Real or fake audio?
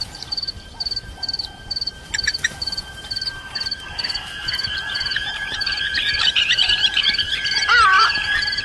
fake